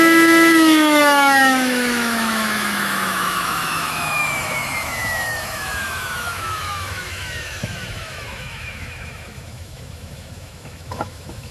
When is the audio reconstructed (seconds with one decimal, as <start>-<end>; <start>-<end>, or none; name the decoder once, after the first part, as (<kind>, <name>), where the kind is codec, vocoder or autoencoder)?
0.0-11.5 (autoencoder, DAC-VAE)

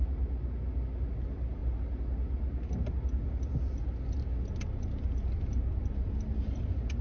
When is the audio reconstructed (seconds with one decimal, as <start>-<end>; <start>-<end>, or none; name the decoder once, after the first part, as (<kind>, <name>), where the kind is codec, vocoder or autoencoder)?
none

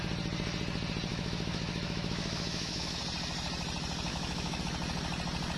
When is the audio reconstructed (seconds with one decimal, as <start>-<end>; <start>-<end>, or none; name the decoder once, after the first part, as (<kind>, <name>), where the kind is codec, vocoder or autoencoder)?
1.1-3.0 (autoencoder, DAC-VAE); 4.1-4.6

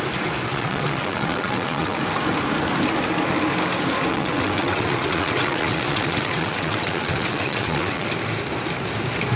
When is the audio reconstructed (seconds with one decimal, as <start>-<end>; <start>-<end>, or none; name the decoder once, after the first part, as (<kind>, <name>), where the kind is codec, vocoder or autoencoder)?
0.5-2.0 (vocoder, WaveNeXt); 4.1-8.1

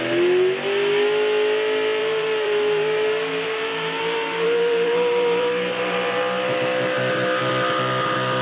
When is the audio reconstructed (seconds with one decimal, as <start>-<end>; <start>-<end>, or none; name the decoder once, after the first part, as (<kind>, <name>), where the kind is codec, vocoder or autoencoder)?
2.0-6.2 (vocoder, BigVGAN v2)